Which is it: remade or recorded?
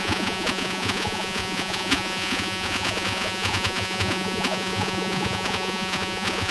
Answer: remade